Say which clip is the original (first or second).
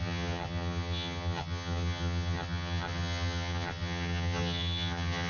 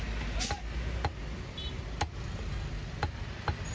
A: second